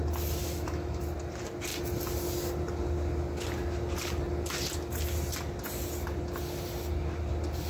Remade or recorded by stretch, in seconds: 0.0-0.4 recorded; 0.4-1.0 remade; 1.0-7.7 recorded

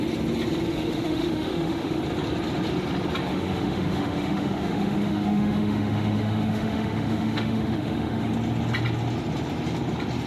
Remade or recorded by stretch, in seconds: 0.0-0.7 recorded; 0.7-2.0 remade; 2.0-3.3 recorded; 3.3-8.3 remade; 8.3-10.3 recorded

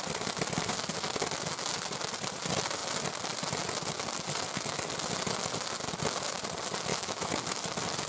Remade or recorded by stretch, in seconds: 0.0-6.9 recorded; 6.9-7.6 remade; 7.6-8.1 recorded

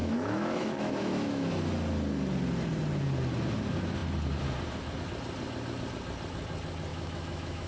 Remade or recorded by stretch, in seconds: 0.0-1.5 remade; 1.5-6.9 recorded; 6.9-7.7 remade